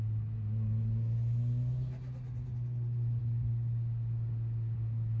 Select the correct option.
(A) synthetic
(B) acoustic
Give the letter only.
B